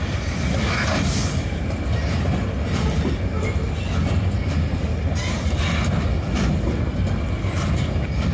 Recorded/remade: recorded